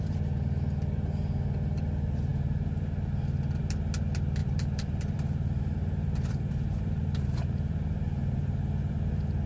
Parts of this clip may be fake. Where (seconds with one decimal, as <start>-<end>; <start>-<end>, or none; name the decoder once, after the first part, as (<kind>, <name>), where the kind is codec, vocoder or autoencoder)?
4.4-9.1 (vocoder, BigVGAN v2)